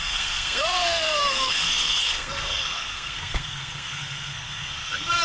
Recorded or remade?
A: remade